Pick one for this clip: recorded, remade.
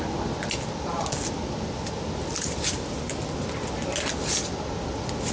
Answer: recorded